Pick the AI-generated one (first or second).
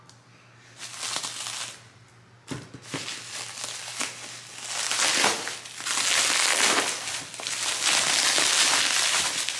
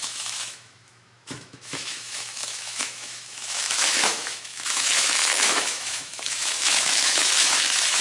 second